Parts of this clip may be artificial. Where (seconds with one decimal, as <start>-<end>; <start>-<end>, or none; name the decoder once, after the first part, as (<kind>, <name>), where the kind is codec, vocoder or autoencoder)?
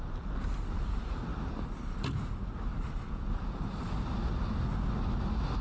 none